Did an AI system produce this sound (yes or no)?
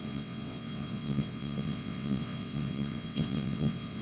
yes